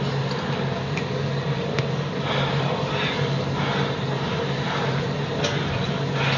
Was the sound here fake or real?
real